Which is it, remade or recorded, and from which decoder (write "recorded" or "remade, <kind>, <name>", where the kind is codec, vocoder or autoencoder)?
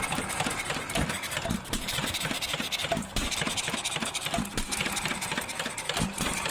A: remade, vocoder, BigVGAN v2